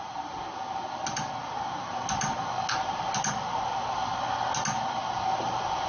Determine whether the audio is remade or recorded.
recorded